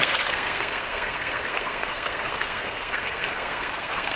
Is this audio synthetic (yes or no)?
yes